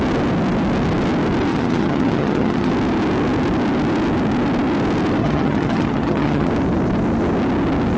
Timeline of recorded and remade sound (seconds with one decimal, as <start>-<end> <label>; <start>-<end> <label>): 0.0-1.5 recorded; 1.5-2.7 remade; 2.7-5.2 recorded; 5.2-6.5 remade; 6.5-8.0 recorded